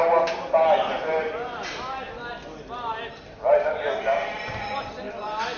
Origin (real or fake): real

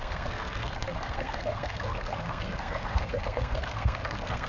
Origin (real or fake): fake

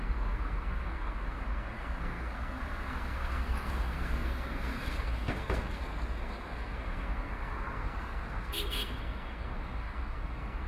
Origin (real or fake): fake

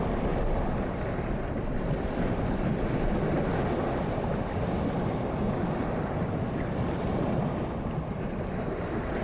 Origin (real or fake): real